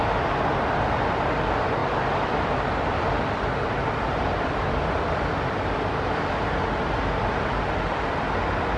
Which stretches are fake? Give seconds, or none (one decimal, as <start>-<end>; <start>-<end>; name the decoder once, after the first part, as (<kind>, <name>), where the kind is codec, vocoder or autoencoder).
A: 1.8-2.9 (vocoder, BigVGAN v2); 3.8-5.5